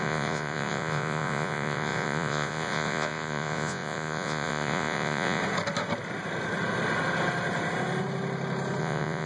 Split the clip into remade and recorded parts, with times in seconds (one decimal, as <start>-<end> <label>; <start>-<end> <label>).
0.0-5.4 remade; 5.4-8.8 recorded; 8.8-9.3 remade